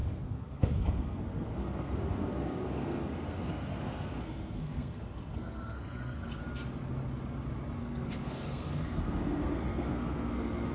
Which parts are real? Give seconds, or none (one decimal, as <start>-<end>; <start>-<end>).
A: 6.4-7.8